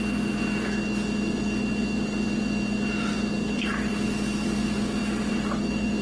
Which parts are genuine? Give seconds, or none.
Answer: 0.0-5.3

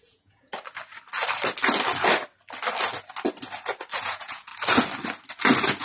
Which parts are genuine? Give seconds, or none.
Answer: 0.5-4.0; 4.5-5.8

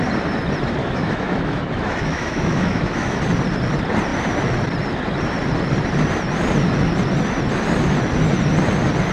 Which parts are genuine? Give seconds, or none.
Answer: 0.0-0.8; 3.2-9.1

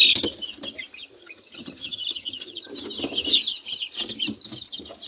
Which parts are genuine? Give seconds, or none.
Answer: 0.0-1.2; 2.7-5.1

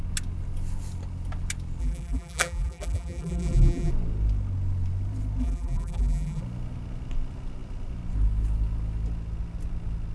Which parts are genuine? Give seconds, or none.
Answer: 0.0-1.8; 3.9-5.4; 6.4-10.1

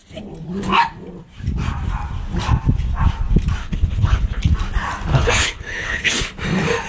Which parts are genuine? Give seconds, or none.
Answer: 0.0-3.6; 4.4-5.1; 6.2-6.9